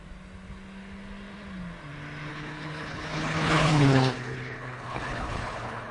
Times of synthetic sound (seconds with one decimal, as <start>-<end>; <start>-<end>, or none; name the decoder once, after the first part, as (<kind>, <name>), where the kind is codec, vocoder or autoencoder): 2.3-5.9 (codec, HILCodec)